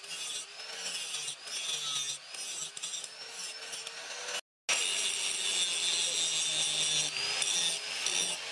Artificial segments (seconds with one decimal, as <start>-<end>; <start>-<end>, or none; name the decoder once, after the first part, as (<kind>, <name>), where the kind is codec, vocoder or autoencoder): none